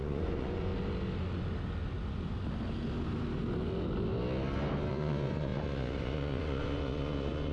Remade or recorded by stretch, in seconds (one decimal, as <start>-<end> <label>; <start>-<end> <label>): 0.0-0.7 remade; 0.7-4.9 recorded; 4.9-7.5 remade